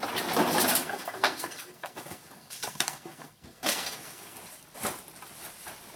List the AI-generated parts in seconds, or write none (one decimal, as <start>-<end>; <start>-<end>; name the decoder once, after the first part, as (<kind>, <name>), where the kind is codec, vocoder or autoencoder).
0.8-4.4 (codec, SNAC)